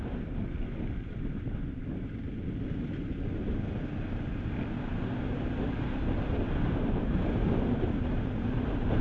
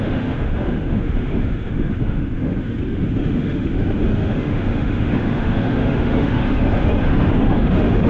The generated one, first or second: second